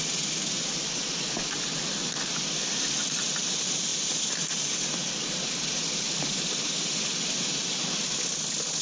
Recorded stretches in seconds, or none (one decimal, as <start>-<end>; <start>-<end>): 0.0-8.8